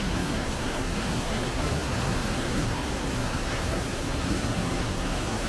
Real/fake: fake